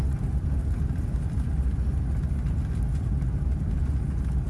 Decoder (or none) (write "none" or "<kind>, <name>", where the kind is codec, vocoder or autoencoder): none